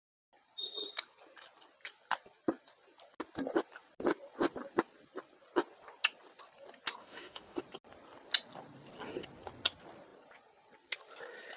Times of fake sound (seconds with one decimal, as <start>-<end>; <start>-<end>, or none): 7.0-7.6